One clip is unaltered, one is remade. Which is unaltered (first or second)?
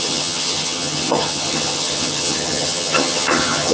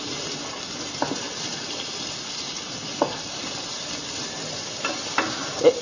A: second